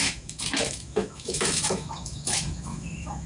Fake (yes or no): yes